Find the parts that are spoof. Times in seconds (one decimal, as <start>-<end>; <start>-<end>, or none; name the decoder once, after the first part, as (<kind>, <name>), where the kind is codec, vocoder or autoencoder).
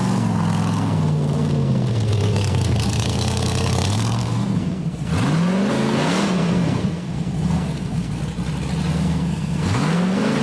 0.0-5.1 (codec, SNAC); 5.7-8.2; 8.9-10.4